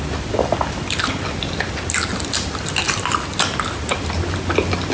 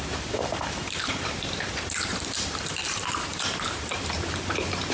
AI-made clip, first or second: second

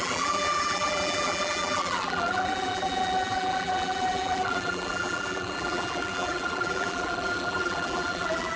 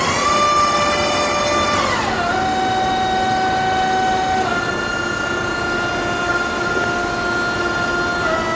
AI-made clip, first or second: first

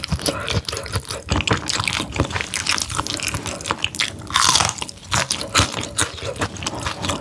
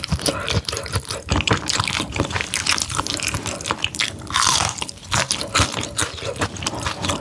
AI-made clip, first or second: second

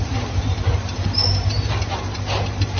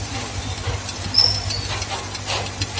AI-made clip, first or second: first